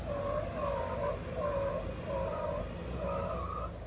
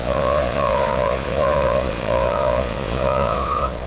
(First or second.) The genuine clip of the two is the first